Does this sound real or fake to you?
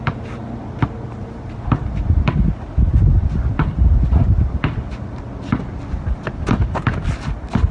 real